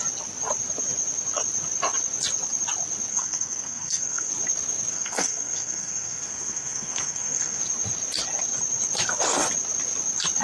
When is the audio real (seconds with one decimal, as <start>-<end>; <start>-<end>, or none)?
0.0-3.1; 4.3-4.9; 7.6-10.4